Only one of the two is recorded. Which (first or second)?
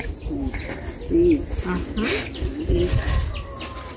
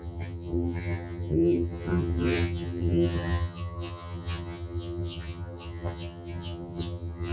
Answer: first